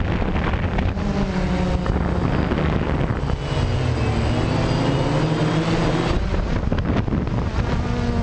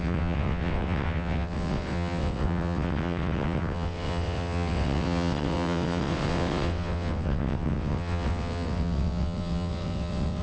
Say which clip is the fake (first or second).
second